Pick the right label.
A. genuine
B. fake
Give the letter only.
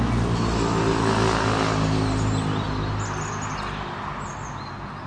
A